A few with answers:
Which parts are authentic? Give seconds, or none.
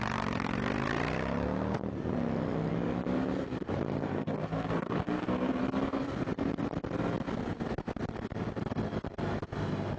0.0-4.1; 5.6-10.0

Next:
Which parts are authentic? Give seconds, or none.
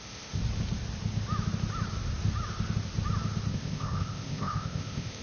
0.4-3.5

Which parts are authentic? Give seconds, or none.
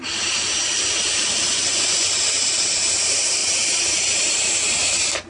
0.0-1.5; 2.1-5.3